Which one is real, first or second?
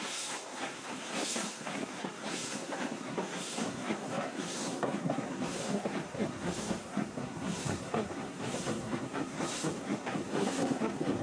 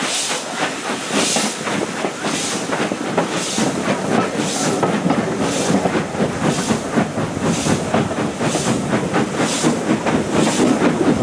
second